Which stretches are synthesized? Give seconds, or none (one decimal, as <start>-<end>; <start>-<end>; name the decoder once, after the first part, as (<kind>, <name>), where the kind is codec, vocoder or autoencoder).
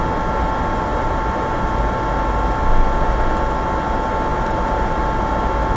0.9-1.8 (vocoder, BigVGAN v2); 4.3-5.0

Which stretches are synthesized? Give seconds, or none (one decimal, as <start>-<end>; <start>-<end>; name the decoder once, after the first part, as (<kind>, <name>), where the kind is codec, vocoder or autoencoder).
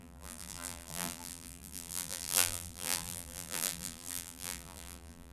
0.0-5.3 (vocoder, BigVGAN v2)